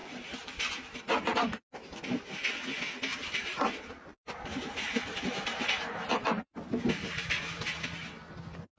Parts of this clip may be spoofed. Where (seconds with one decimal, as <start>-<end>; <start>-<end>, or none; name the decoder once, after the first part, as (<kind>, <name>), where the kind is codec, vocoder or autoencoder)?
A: 0.0-1.0 (vocoder, BigVGAN v2); 3.1-7.8

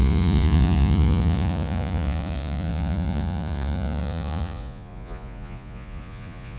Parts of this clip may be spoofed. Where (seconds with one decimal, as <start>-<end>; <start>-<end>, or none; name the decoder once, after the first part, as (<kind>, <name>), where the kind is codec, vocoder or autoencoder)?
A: 0.0-6.6 (vocoder, Vocos)